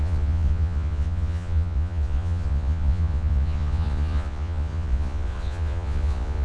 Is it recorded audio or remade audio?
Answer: remade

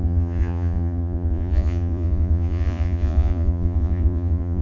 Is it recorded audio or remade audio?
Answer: remade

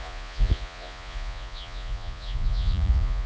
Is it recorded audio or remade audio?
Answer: remade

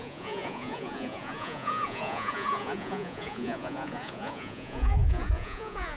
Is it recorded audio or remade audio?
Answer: remade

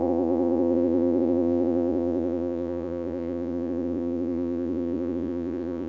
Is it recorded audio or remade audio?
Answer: remade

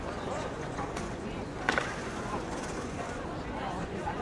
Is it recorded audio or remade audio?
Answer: remade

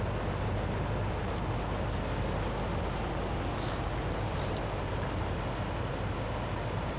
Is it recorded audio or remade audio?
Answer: recorded